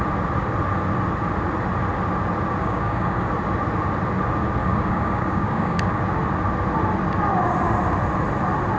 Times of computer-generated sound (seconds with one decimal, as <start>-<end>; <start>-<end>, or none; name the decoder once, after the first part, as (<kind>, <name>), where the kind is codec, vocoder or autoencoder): 2.6-3.3 (codec, DAC); 4.6-6.0